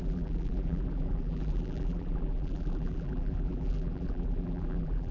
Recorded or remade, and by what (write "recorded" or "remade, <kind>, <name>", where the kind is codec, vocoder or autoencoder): remade, vocoder, BigVGAN v2